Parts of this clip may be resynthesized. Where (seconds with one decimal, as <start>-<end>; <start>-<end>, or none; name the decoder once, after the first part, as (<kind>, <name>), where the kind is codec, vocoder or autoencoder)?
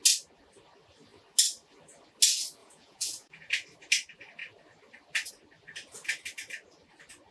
2.6-3.5 (vocoder, Vocos)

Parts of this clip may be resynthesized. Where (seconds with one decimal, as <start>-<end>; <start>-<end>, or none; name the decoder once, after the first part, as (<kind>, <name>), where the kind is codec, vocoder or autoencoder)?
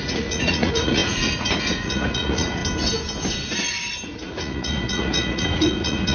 0.0-2.6 (vocoder, Vocos); 3.9-6.1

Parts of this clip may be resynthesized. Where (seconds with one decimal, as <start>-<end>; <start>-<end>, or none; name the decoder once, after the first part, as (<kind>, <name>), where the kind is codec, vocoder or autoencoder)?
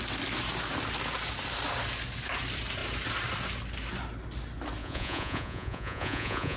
4.8-6.6 (vocoder, Vocos)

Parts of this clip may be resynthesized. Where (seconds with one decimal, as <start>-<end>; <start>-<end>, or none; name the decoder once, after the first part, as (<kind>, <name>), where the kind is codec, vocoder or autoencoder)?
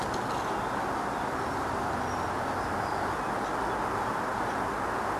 none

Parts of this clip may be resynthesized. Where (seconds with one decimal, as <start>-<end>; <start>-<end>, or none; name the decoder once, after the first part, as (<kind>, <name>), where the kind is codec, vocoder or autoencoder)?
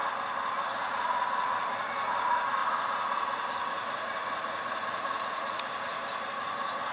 0.6-6.9 (vocoder, Vocos)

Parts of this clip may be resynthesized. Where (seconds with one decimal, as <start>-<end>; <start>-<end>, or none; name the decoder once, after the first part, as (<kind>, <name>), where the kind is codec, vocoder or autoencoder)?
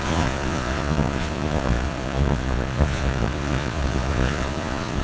0.0-5.0 (vocoder, Vocos)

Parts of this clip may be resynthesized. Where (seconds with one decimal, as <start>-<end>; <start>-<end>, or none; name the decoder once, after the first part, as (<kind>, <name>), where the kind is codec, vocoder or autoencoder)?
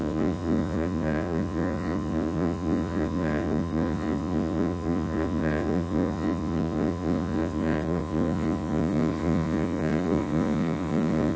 0.0-11.4 (vocoder, Vocos)